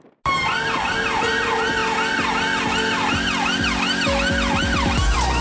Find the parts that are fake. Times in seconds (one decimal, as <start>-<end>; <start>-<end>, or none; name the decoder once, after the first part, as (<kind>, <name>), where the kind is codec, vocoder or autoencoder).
none